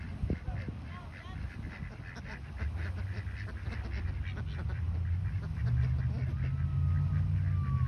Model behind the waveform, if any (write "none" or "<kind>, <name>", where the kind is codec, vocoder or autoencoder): none